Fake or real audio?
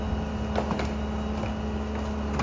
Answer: real